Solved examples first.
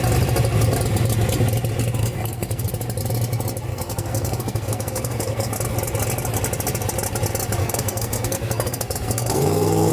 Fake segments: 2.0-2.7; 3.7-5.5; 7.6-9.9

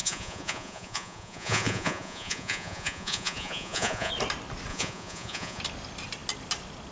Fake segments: 0.0-4.1; 4.7-5.6

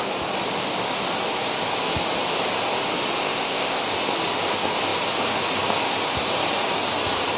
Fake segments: 3.2-3.8

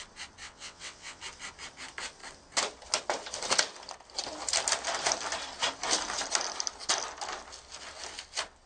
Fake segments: 0.4-1.2

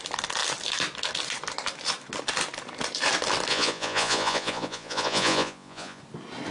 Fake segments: 3.5-6.0